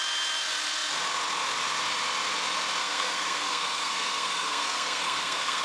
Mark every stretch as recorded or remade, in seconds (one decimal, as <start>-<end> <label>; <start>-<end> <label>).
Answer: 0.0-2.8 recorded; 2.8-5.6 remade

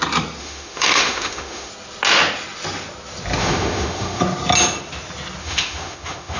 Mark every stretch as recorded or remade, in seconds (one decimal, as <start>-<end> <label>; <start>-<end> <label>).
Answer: 0.0-0.4 recorded; 0.4-1.7 remade; 1.7-3.4 recorded; 3.4-4.2 remade; 4.2-5.4 recorded; 5.4-6.4 remade

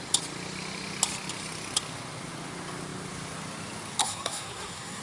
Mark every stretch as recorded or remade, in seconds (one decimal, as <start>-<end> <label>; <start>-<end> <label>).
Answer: 0.0-4.0 recorded; 4.0-5.0 remade